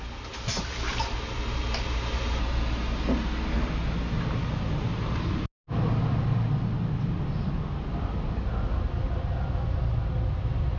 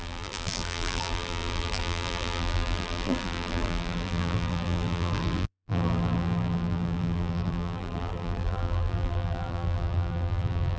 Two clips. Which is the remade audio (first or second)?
second